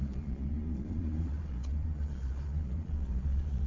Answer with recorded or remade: remade